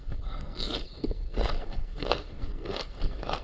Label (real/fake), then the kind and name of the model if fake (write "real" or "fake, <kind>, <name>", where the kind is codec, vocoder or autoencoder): fake, codec, SNAC